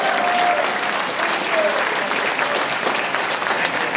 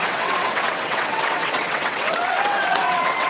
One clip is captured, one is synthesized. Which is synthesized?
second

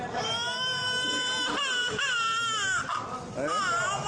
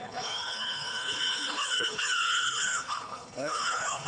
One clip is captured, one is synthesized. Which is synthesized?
second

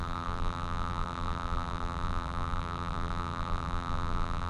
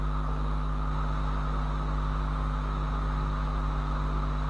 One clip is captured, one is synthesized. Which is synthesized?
first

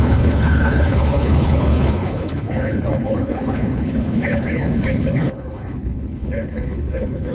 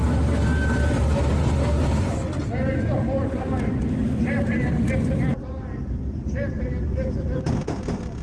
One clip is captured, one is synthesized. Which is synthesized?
first